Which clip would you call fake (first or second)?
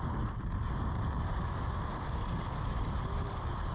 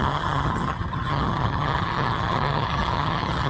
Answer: second